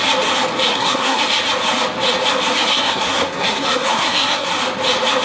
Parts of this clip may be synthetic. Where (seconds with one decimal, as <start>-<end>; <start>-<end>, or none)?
0.7-1.2; 2.7-4.5